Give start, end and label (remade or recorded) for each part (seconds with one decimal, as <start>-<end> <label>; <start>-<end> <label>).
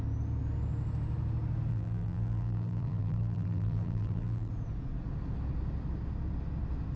0.0-1.7 recorded; 1.7-4.5 remade; 4.5-7.0 recorded